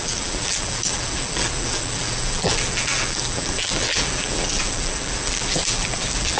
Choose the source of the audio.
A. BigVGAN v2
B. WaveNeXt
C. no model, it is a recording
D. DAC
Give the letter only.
A